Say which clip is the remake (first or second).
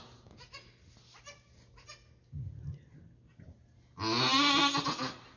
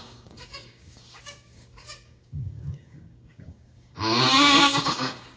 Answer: second